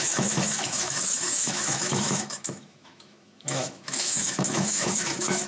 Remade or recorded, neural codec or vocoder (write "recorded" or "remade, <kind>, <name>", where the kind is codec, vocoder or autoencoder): remade, autoencoder, DAC-VAE